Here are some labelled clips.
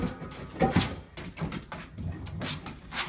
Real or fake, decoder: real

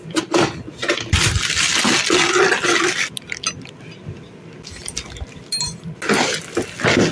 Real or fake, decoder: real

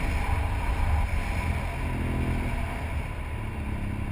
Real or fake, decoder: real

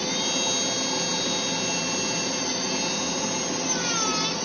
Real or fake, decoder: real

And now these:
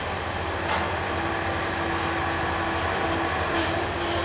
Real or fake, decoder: real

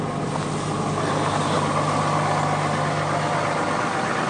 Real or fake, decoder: real